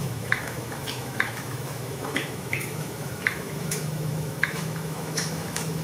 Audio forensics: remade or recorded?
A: remade